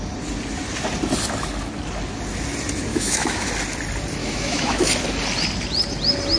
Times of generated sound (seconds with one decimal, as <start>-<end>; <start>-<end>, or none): 2.9-3.5; 4.2-4.9